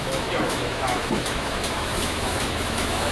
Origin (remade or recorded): remade